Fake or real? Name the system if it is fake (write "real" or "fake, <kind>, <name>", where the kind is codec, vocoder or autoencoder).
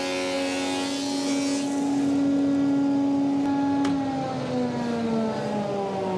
real